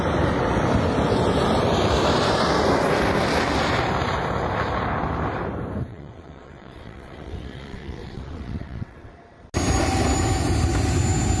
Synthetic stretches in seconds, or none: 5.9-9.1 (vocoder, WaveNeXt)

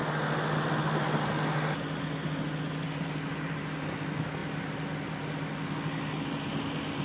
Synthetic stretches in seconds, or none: none